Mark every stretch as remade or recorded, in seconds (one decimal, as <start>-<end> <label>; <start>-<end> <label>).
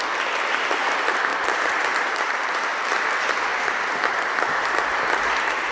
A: 0.0-1.3 recorded; 1.3-2.5 remade; 2.5-3.5 recorded; 3.5-5.0 remade; 5.0-5.7 recorded